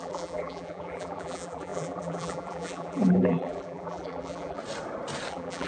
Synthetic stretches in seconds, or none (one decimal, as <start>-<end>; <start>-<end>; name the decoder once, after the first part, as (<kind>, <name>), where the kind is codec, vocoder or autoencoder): 0.0-4.6 (vocoder, BigVGAN v2); 5.3-5.7